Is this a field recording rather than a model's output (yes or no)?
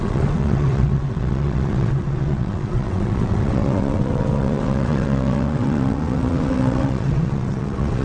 no